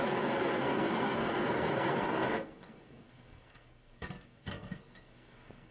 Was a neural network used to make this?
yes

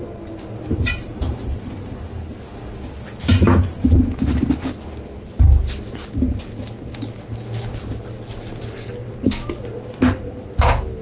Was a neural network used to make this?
no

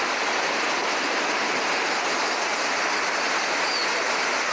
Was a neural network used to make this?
no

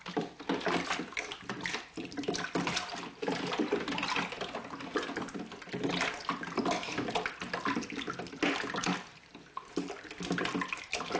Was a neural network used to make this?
no